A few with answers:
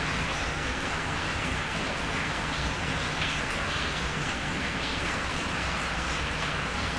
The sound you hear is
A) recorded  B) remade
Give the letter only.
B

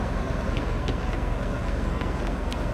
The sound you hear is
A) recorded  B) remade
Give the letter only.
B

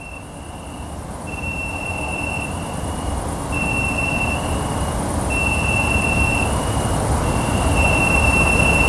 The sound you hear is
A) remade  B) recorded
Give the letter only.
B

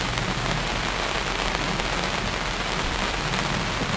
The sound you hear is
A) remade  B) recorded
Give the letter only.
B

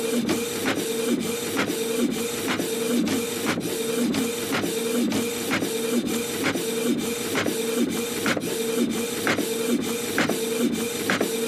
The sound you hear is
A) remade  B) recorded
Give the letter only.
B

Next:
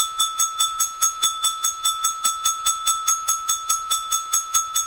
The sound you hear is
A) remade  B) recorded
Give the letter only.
A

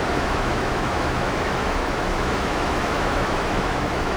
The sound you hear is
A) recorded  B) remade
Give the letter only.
B